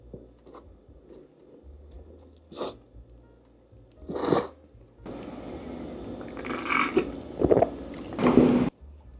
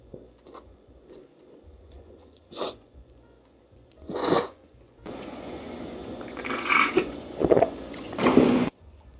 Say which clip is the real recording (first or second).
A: first